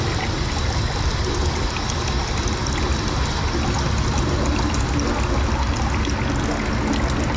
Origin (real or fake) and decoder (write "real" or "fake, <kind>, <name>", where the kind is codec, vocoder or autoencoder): real